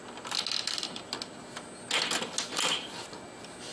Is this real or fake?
real